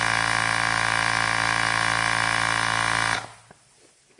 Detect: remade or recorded recorded